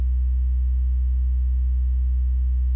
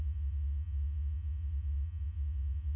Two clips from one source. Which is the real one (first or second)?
first